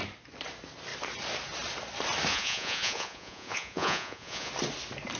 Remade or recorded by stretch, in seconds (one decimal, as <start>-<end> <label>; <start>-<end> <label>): 0.0-2.3 recorded; 2.3-4.5 remade; 4.5-5.2 recorded